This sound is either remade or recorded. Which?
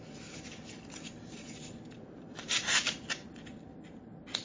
recorded